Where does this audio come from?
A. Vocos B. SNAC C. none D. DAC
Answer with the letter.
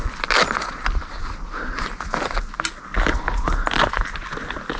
C